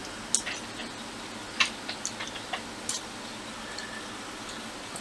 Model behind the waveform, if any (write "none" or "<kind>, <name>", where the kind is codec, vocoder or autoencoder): none